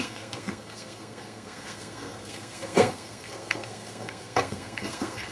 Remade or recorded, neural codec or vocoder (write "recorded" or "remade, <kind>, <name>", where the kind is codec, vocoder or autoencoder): remade, codec, SNAC